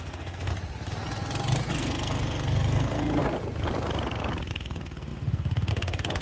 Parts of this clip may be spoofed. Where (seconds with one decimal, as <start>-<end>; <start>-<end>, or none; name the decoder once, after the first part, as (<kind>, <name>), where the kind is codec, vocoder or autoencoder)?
0.0-0.5 (codec, SNAC); 1.7-3.2; 4.5-6.2